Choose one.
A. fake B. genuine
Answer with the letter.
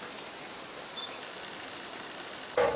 B